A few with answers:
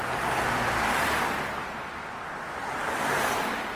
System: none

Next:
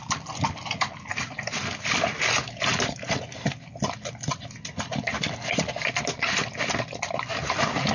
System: none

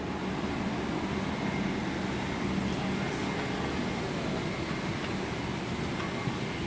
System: none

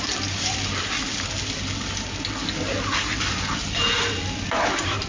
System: none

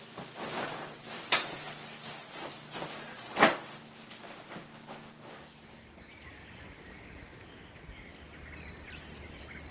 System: none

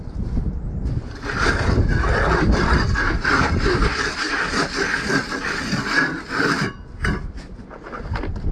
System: vocoder, BigVGAN v2